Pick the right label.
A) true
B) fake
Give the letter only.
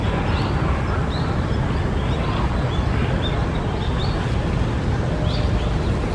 A